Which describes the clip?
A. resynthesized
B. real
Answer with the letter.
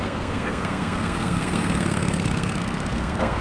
A